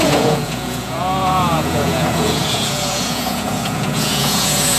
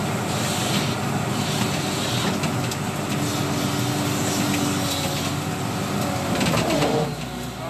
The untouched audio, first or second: second